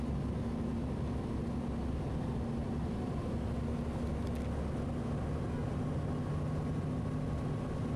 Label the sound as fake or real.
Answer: real